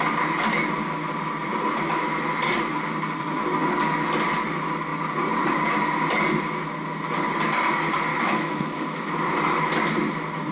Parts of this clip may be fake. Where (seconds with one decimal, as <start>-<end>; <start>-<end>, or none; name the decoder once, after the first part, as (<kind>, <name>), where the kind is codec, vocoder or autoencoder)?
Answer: 8.1-9.1 (autoencoder, DAC-VAE)